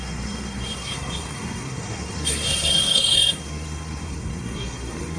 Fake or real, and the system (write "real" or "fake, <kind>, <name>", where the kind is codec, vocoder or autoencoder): fake, codec, SNAC